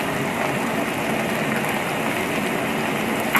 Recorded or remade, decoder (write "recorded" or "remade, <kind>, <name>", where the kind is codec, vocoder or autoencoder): recorded